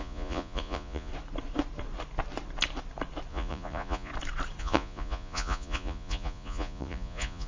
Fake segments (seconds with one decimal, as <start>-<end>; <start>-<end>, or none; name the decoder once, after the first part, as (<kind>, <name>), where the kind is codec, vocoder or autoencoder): 0.0-1.1 (vocoder, Vocos); 3.3-4.1; 4.6-7.5